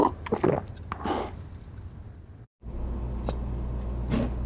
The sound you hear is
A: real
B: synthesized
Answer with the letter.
A